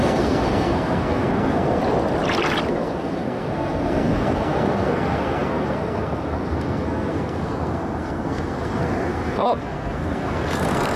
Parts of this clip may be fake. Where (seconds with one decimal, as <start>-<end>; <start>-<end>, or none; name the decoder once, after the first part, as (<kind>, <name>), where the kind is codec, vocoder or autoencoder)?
0.0-1.8 (codec, SNAC); 2.7-11.0